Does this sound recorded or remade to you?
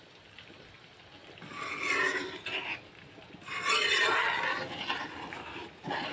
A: recorded